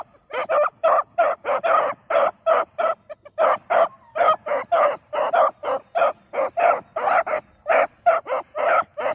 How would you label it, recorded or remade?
recorded